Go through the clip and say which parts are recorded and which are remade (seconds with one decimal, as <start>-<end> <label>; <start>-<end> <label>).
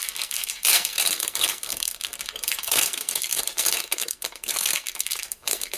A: 0.0-5.8 remade